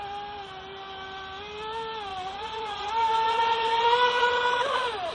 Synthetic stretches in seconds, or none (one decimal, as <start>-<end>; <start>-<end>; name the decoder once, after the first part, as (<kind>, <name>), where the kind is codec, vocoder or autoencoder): 2.1-2.9 (vocoder, Vocos)